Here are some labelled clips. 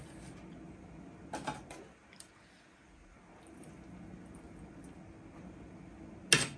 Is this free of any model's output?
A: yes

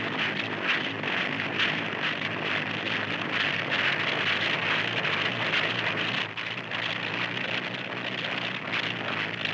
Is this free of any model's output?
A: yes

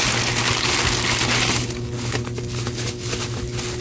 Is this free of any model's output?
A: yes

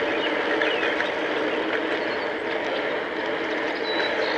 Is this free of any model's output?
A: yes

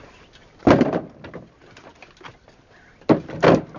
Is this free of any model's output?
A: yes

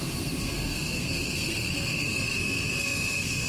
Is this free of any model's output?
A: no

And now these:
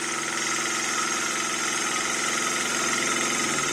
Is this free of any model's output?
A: yes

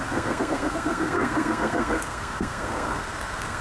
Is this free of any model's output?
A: no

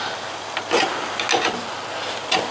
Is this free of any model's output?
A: yes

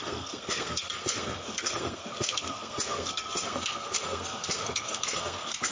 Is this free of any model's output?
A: no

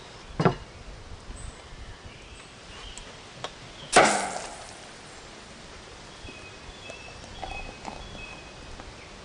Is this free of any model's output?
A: yes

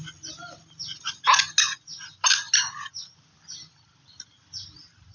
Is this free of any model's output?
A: yes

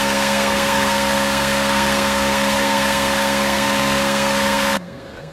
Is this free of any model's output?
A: no